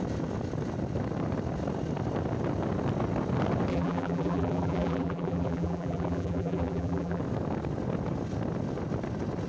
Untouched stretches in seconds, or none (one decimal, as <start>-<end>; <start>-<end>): 0.0-3.7; 7.2-9.5